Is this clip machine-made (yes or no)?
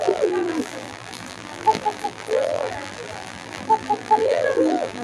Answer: yes